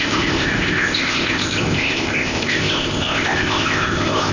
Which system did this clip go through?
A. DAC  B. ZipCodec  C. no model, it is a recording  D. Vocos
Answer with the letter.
B